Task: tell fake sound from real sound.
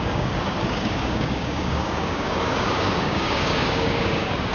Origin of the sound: fake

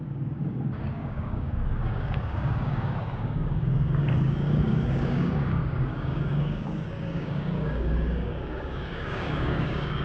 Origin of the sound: fake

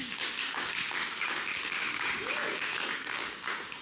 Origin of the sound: fake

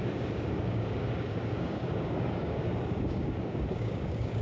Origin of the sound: fake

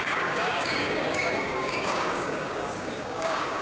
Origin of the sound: fake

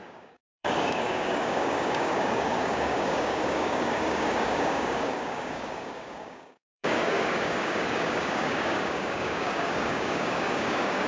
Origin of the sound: fake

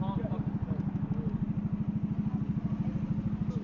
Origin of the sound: real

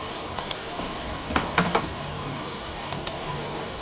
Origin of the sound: fake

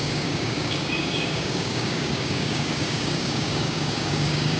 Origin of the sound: fake